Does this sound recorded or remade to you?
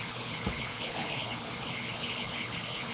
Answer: remade